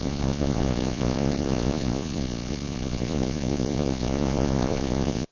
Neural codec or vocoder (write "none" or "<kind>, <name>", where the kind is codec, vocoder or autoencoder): vocoder, Vocos